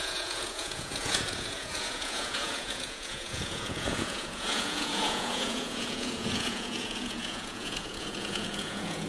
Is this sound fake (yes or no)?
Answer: yes